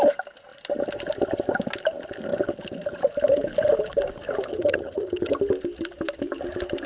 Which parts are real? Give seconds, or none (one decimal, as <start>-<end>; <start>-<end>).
0.0-4.5; 5.4-6.9